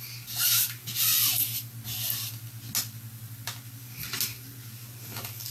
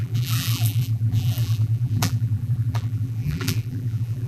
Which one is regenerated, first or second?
second